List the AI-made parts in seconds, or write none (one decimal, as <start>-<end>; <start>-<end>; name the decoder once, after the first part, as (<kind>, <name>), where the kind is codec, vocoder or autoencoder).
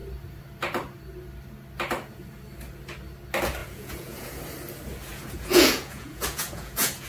3.6-4.4 (vocoder, Vocos); 5.1-7.1